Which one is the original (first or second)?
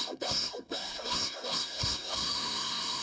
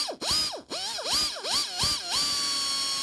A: second